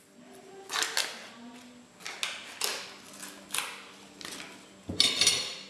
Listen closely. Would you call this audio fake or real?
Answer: real